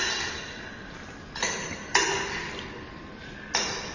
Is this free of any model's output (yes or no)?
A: yes